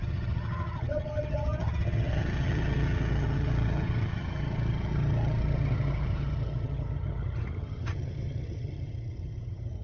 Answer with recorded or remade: remade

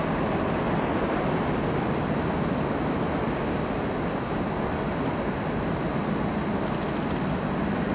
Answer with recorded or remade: recorded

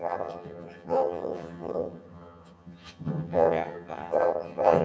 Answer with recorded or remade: remade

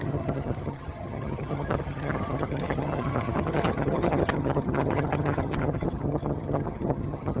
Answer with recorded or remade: remade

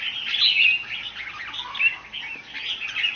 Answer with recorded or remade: recorded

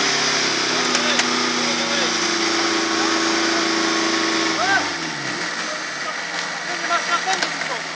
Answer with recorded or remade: recorded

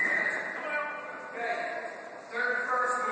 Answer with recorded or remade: recorded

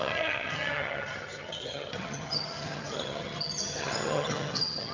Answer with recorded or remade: remade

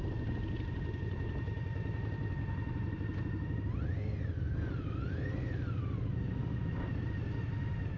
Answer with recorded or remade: recorded